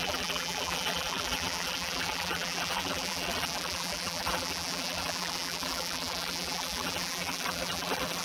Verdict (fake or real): fake